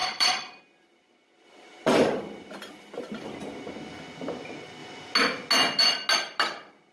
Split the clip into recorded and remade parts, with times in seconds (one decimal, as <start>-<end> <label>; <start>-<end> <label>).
0.0-0.6 remade; 0.6-6.9 recorded

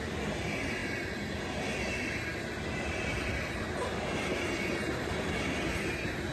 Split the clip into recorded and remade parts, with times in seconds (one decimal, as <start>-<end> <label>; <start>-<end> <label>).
0.0-6.3 recorded

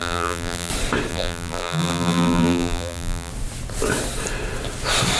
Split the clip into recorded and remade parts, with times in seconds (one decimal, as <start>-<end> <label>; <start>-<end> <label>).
0.0-0.7 remade; 0.7-1.1 recorded; 1.1-3.3 remade; 3.3-5.2 recorded

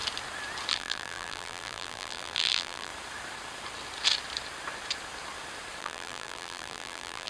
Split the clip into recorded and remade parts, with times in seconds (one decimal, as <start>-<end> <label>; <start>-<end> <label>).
0.0-0.7 recorded; 0.7-2.9 remade; 2.9-5.8 recorded; 5.8-7.3 remade